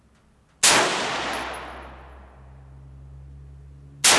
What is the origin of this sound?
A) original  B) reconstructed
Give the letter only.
A